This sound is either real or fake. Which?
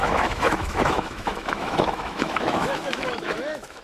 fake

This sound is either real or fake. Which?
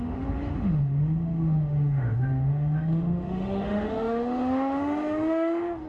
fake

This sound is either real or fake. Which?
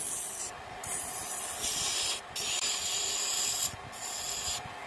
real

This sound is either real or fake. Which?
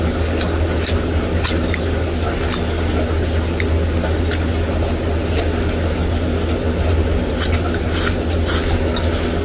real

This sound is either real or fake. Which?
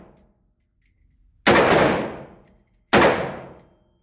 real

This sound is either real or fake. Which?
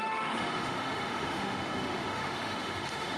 fake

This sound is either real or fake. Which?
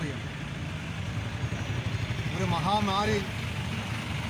real